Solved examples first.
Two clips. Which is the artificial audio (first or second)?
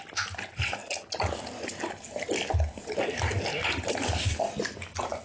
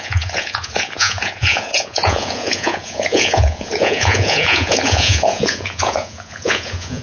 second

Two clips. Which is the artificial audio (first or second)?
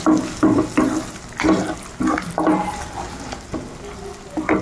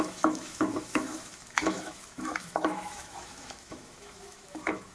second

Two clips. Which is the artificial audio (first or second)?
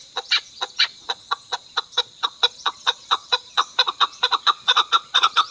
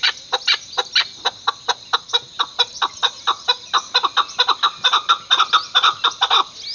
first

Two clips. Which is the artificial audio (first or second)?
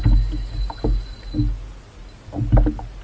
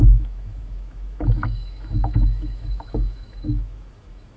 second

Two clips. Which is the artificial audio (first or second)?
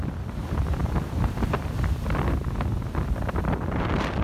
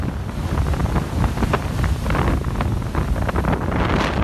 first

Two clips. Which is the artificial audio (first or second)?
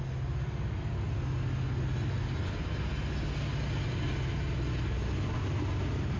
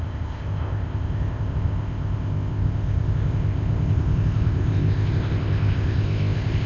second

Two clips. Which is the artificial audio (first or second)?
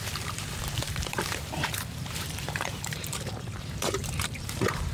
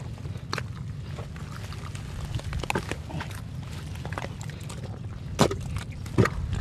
first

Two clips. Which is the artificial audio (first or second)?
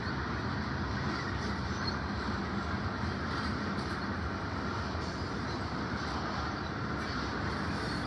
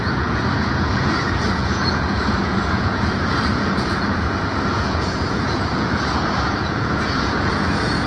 second